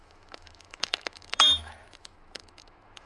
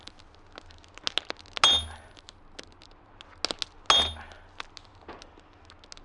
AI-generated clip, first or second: first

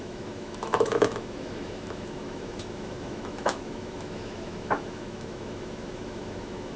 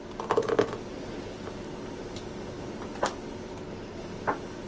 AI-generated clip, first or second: first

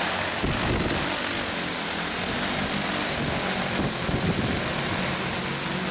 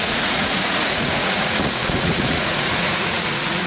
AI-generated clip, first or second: second